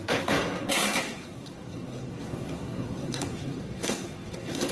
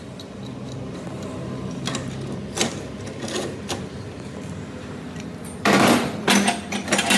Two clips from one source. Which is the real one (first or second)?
second